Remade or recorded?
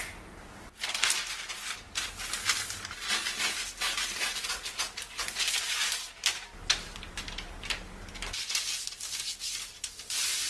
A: recorded